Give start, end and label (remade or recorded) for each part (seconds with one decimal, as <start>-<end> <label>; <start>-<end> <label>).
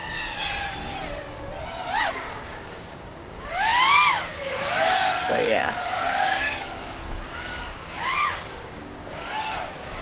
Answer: 0.0-2.1 recorded; 2.1-10.0 remade